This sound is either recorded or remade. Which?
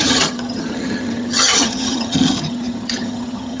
remade